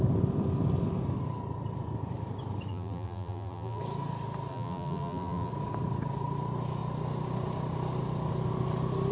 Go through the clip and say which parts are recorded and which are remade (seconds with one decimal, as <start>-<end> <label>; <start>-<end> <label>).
0.0-2.7 recorded; 2.7-3.8 remade; 3.8-4.5 recorded; 4.5-5.5 remade; 5.5-9.1 recorded